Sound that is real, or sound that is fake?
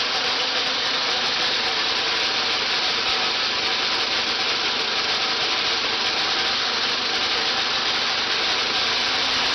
fake